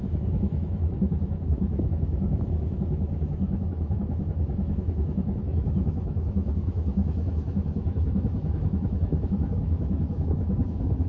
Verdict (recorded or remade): remade